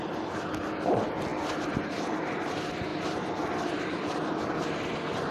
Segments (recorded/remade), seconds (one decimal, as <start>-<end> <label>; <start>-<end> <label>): 0.0-5.3 recorded